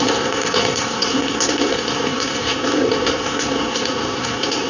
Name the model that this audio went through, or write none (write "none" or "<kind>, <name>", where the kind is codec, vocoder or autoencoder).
codec, SNAC